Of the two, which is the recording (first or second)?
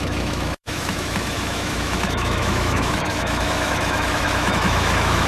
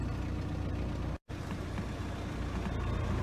second